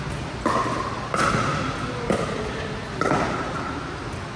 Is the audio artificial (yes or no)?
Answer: no